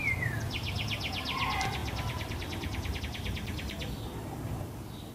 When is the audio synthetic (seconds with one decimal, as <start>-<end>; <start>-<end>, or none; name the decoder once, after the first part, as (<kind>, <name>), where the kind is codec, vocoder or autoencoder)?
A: 0.0-1.1 (vocoder, BigVGAN v2); 1.8-3.0